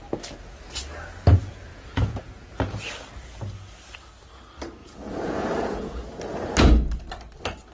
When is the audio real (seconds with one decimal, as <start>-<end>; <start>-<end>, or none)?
0.0-1.7; 2.5-4.8; 6.0-7.7